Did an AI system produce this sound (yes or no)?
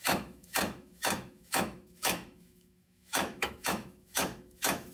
yes